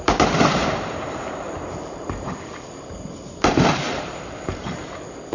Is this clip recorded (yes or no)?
no